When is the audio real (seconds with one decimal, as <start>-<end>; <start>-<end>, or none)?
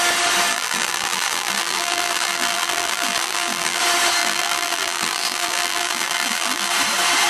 0.0-0.5; 3.8-4.2; 6.7-7.3